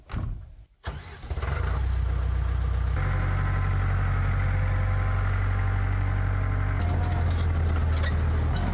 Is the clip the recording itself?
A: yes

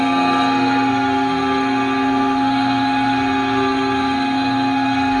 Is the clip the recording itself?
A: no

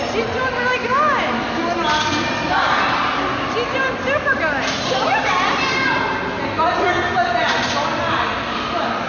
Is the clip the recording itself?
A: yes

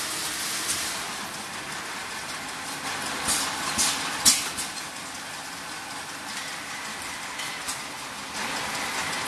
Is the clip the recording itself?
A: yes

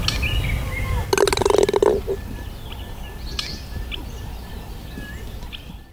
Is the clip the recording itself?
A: yes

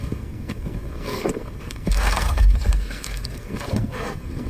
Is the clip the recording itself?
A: no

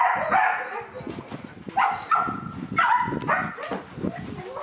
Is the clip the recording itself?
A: yes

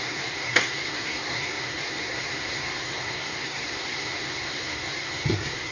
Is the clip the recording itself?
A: no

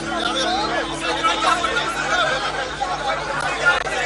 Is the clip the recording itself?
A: yes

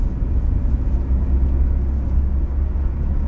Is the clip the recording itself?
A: yes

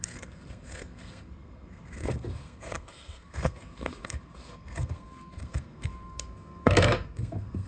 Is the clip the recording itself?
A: no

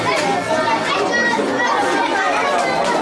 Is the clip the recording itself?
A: yes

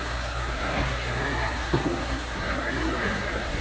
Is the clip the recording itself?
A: no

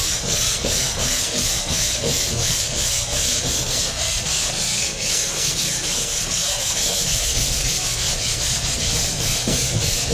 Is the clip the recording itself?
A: no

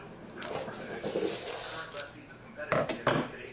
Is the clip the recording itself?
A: yes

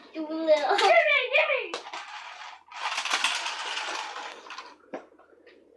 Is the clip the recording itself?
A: yes